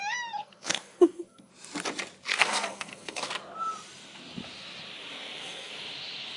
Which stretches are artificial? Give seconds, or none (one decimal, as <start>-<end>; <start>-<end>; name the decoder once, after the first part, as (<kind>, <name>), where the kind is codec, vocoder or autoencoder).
0.4-1.5 (codec, SNAC); 2.3-3.3; 5.1-5.7